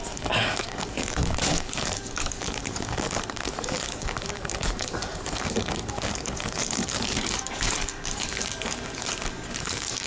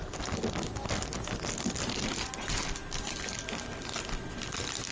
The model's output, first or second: first